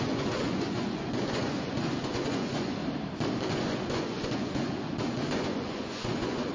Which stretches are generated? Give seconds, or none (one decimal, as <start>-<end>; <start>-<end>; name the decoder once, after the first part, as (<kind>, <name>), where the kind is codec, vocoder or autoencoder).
0.0-2.8 (vocoder, Vocos); 3.5-6.5